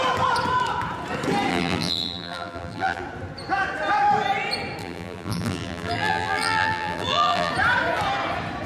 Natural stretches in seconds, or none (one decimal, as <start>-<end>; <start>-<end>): 0.0-1.5; 3.0-4.8; 7.5-8.7